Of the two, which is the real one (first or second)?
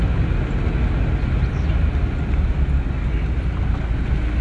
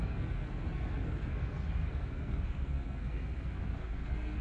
first